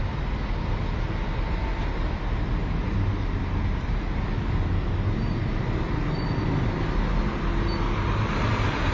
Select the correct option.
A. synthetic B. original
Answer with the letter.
B